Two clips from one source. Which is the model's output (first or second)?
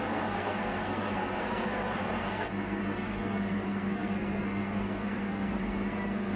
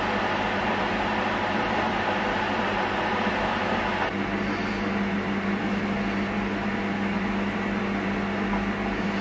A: first